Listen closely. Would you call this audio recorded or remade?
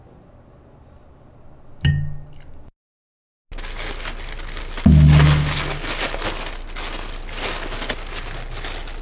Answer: recorded